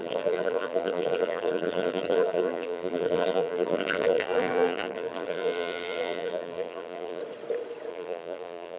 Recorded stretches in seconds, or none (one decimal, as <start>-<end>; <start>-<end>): 7.2-7.9